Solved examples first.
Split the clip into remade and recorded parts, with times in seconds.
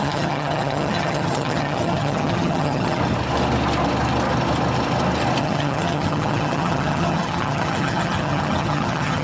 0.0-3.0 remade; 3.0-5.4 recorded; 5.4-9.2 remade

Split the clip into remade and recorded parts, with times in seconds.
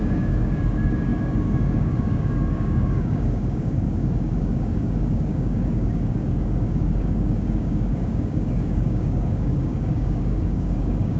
0.0-11.2 remade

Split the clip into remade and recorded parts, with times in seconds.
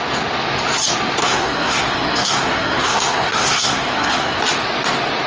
0.0-1.2 recorded; 1.2-4.4 remade; 4.4-5.3 recorded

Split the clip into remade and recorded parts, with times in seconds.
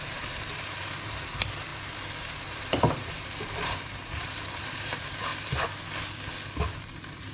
0.0-1.7 remade; 1.7-2.2 recorded; 2.2-5.3 remade; 5.3-6.6 recorded; 6.6-7.3 remade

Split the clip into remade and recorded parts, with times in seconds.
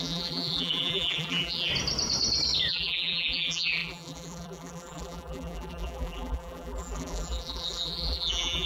0.0-1.7 remade; 1.7-2.7 recorded; 2.7-8.7 remade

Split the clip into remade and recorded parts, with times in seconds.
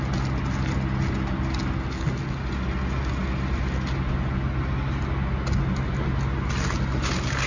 0.0-7.5 recorded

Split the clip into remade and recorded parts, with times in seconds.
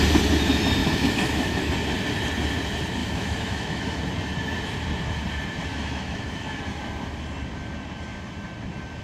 0.0-0.8 recorded; 0.8-1.6 remade; 1.6-3.0 recorded; 3.0-4.0 remade; 4.0-5.7 recorded; 5.7-6.6 remade; 6.6-9.0 recorded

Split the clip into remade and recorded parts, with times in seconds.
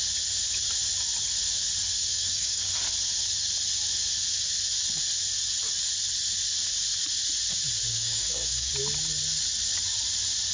0.0-2.0 recorded; 2.0-2.7 remade; 2.7-7.9 recorded; 7.9-8.7 remade; 8.7-10.5 recorded